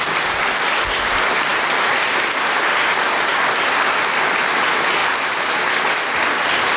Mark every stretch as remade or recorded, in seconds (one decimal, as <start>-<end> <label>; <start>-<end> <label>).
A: 0.0-6.8 recorded